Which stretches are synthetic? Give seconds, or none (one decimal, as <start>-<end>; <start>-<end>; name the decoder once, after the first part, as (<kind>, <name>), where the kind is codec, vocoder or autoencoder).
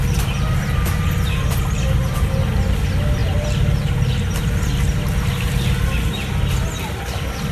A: none